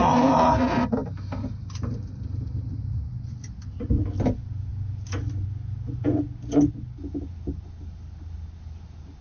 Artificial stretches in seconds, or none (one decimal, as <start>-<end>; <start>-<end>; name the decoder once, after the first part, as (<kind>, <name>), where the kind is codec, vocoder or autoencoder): 1.0-2.9 (vocoder, BigVGAN v2)